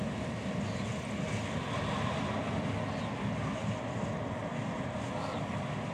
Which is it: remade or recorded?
recorded